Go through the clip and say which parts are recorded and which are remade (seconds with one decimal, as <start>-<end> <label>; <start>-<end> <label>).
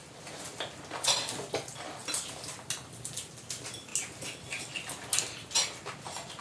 0.0-6.4 recorded